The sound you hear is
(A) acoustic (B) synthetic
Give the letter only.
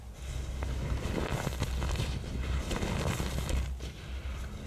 A